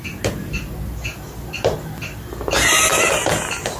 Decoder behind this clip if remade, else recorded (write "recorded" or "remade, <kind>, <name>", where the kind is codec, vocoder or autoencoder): recorded